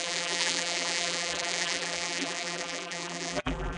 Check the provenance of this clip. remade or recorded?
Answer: remade